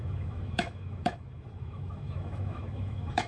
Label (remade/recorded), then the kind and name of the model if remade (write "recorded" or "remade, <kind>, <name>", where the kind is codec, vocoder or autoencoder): remade, autoencoder, DAC-VAE